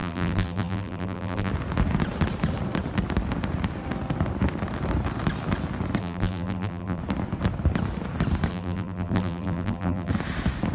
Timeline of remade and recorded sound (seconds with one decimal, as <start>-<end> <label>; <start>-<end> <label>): 0.0-1.5 remade; 1.5-6.0 recorded; 6.0-7.0 remade; 7.0-8.5 recorded; 8.5-10.1 remade; 10.1-10.7 recorded